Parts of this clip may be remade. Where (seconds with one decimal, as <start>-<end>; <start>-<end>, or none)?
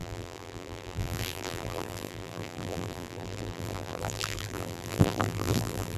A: 0.0-6.0